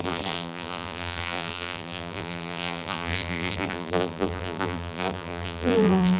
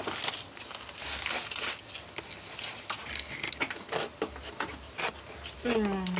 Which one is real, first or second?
second